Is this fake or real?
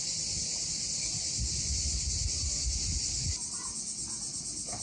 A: real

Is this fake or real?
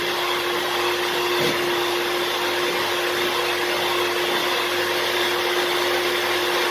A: real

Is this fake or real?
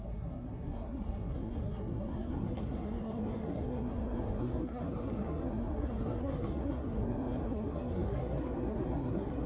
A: fake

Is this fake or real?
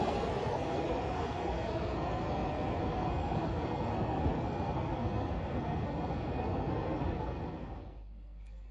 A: fake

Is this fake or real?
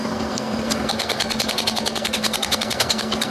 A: fake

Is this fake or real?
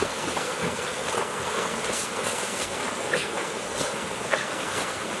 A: fake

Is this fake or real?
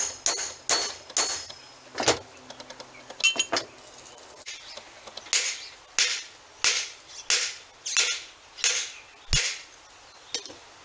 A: real